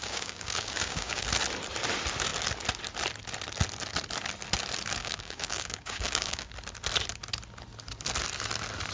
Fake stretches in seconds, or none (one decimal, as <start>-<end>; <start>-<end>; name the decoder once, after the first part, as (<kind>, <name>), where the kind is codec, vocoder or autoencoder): 0.0-1.3 (codec, DAC); 5.0-6.5